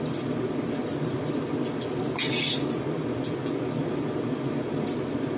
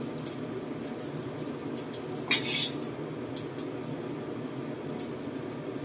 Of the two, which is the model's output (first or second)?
first